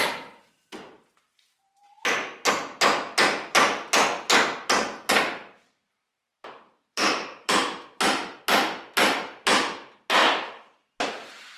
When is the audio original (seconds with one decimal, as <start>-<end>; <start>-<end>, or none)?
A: 0.0-6.3; 8.4-11.6